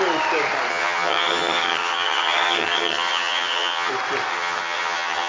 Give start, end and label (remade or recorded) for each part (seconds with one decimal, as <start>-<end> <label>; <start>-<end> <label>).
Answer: 0.0-0.7 recorded; 0.7-3.9 remade; 3.9-4.3 recorded; 4.3-5.3 remade